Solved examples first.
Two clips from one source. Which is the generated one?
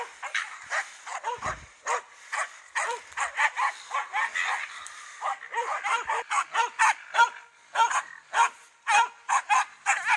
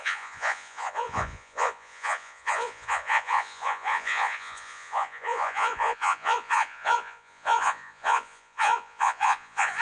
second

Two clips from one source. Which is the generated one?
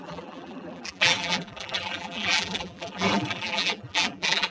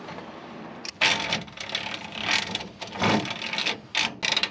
first